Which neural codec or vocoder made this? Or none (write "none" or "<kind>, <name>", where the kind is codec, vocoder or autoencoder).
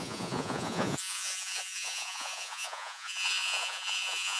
vocoder, Vocos